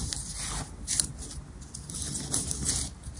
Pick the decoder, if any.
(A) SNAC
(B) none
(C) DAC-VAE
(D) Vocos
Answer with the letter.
B